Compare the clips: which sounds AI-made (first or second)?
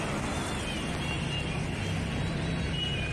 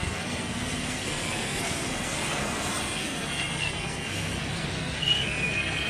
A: second